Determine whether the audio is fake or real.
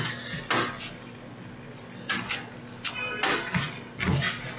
real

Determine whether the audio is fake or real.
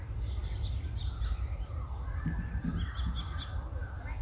real